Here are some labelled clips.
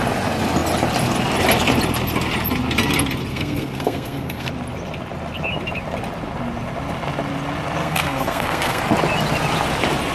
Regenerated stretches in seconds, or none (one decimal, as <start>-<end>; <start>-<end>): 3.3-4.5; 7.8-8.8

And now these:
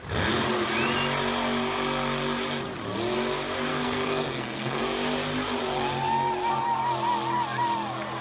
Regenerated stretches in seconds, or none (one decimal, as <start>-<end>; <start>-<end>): 3.7-4.8

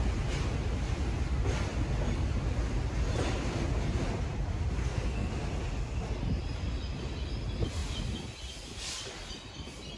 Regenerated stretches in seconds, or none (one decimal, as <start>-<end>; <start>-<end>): 4.8-5.3

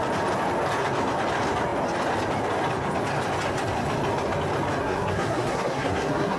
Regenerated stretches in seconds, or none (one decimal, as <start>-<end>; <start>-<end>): 4.8-6.4

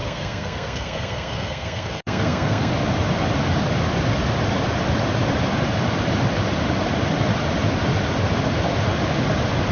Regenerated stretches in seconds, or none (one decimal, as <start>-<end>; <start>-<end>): 0.0-2.7

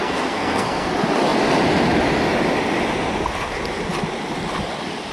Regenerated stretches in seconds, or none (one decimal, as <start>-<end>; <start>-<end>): 0.0-0.9

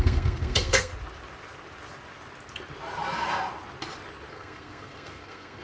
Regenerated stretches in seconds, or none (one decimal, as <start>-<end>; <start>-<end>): 0.0-0.9; 4.3-5.6